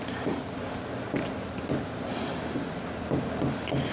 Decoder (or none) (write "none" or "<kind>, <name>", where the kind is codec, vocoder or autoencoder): none